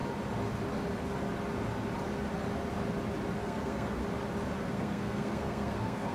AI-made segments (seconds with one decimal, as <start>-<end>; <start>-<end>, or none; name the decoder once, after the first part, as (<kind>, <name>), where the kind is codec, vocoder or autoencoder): 3.4-4.0 (codec, SNAC); 4.7-6.1